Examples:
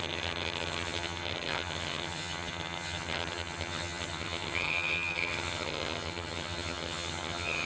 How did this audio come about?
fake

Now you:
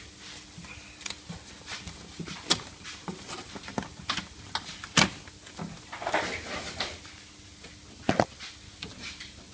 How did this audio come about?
real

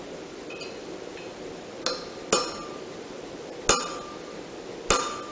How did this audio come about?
real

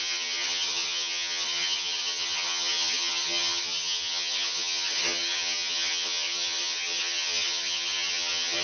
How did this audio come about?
fake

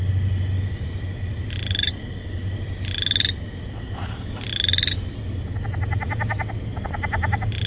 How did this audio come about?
real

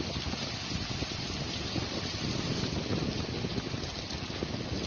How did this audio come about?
real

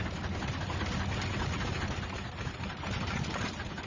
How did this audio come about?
real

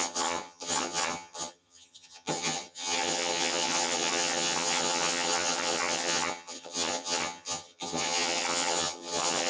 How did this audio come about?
fake